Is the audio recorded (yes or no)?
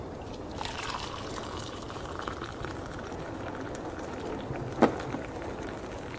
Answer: yes